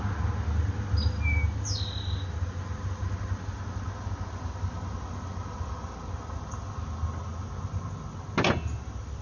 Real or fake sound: real